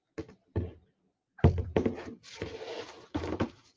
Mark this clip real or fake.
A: real